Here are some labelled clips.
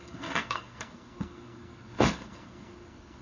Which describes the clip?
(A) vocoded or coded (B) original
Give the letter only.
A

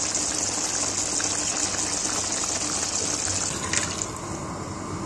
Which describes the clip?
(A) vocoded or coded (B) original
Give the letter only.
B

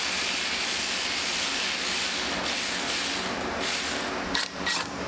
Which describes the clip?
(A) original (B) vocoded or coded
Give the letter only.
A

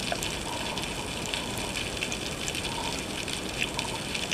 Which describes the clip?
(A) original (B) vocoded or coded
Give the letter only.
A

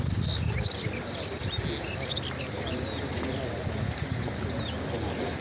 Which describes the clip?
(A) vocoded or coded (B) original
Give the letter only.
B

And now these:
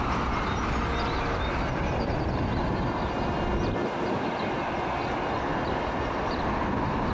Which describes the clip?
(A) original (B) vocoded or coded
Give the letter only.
A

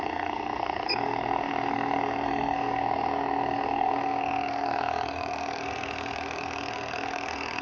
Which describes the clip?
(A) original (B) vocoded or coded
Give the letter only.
B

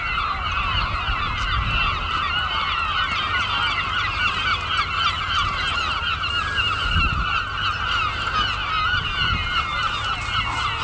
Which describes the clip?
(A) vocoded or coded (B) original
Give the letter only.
B